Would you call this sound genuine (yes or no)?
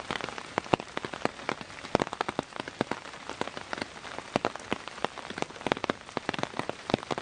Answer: yes